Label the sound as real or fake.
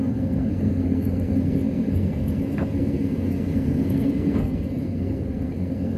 fake